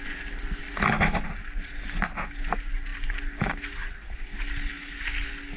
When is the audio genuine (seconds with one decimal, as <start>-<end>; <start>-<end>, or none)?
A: 0.0-5.6